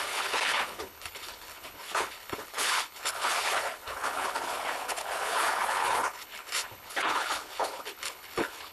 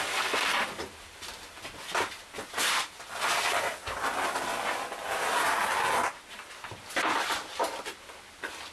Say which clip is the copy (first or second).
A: first